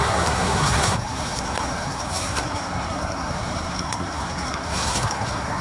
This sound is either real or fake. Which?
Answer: fake